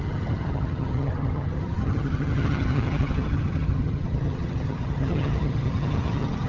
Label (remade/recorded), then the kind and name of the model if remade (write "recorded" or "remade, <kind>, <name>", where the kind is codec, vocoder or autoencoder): remade, vocoder, HiFi-GAN